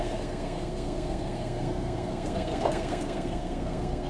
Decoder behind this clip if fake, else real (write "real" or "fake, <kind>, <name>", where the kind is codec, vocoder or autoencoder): fake, codec, SNAC